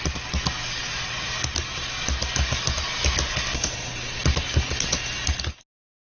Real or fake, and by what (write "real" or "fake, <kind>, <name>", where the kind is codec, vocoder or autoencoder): real